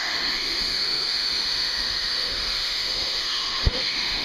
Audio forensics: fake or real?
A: fake